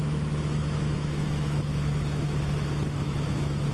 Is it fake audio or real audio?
fake